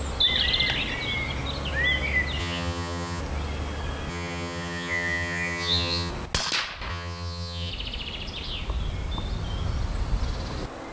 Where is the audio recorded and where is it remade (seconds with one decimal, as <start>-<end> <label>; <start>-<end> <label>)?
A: 0.0-2.4 recorded; 2.4-3.2 remade; 3.2-4.1 recorded; 4.1-6.1 remade; 6.1-6.9 recorded; 6.9-7.7 remade; 7.7-10.9 recorded